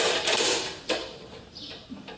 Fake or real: fake